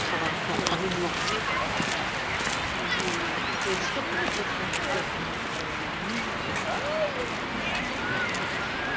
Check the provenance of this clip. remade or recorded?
recorded